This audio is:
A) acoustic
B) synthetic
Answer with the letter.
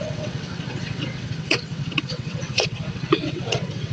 B